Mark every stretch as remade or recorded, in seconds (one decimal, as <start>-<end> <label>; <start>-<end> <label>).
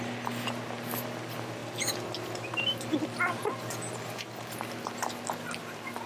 0.0-6.1 recorded